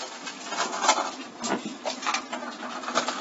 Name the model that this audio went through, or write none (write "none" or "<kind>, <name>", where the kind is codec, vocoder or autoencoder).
none